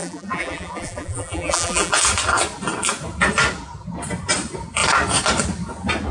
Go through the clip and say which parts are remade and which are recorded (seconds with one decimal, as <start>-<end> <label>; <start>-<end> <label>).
0.0-1.9 remade; 1.9-6.1 recorded